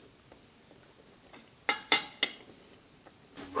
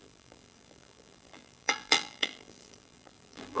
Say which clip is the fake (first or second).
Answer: second